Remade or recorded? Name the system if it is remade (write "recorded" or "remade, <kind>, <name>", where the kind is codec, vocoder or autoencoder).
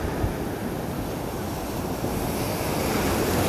recorded